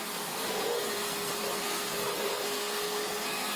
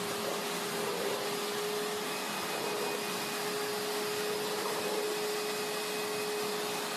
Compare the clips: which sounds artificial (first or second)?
first